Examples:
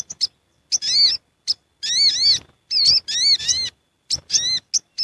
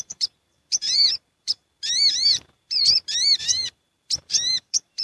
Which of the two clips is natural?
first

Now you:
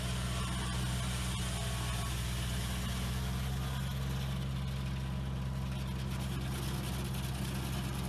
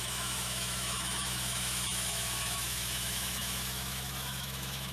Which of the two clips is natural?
first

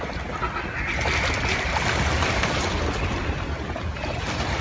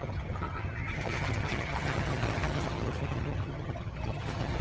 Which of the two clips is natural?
first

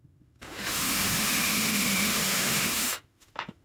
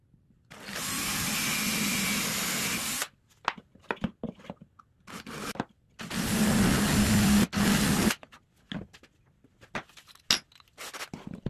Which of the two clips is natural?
second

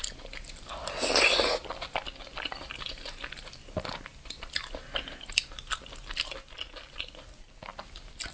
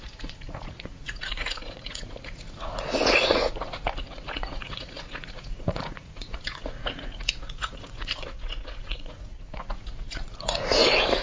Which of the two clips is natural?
first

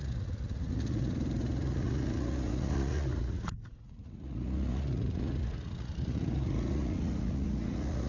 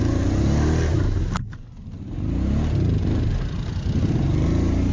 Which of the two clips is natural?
second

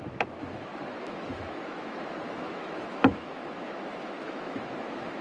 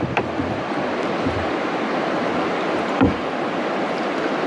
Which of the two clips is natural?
second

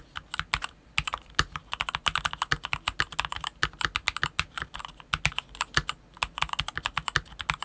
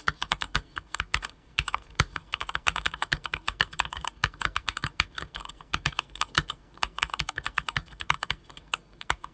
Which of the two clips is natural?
first